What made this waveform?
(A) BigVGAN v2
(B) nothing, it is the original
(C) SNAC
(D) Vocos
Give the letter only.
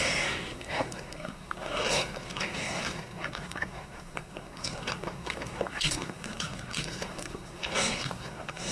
C